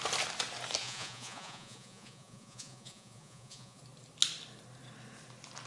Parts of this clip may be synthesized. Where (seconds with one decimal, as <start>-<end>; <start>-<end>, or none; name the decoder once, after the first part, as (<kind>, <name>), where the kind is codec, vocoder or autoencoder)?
0.8-3.8 (vocoder, Vocos)